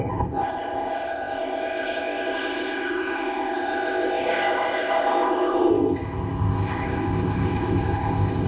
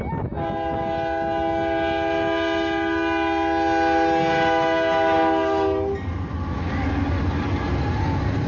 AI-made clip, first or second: first